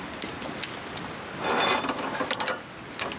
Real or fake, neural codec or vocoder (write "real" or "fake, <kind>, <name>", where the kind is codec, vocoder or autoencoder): real